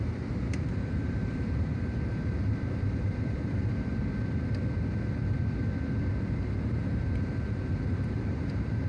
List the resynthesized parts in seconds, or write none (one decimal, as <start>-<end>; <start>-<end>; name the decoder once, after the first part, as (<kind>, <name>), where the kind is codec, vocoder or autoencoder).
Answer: 0.0-3.9 (vocoder, BigVGAN v2); 7.9-8.9